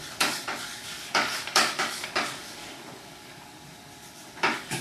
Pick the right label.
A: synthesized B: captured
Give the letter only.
A